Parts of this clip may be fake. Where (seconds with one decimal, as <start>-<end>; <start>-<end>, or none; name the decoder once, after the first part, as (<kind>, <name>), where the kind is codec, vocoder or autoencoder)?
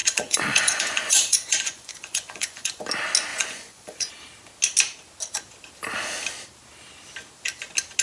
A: 0.0-2.8 (vocoder, Vocos); 3.3-4.1